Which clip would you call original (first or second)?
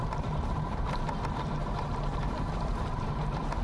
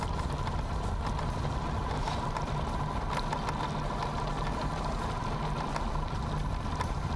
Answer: second